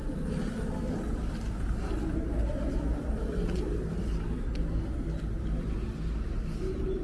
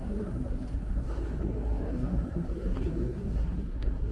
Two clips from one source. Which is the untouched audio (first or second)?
first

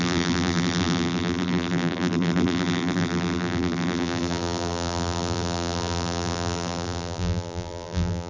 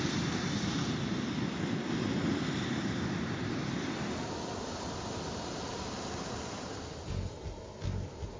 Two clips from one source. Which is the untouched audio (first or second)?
second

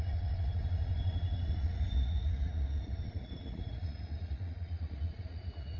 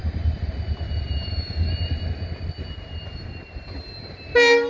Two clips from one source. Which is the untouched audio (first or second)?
second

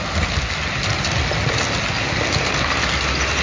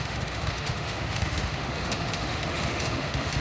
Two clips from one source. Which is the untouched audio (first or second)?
first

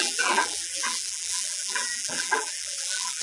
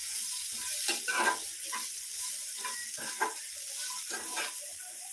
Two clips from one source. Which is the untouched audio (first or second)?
second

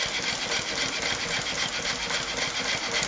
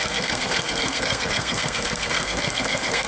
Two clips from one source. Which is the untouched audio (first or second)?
first